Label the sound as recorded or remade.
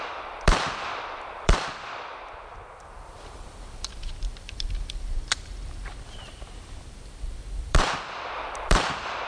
remade